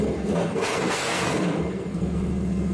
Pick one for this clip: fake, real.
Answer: fake